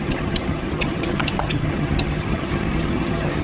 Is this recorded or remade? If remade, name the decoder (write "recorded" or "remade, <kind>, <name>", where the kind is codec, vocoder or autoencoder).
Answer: remade, vocoder, HiFi-GAN